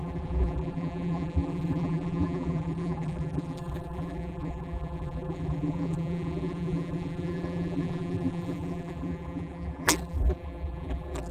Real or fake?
fake